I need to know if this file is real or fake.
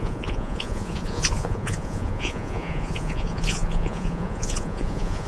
fake